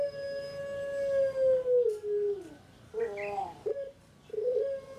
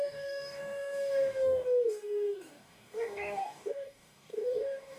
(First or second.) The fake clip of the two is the second